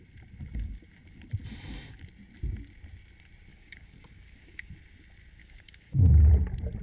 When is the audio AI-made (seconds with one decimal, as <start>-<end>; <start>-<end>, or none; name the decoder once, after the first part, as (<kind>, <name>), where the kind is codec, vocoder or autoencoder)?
3.5-4.7 (codec, DAC); 5.4-6.3